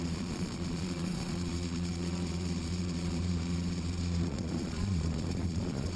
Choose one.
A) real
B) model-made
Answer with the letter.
B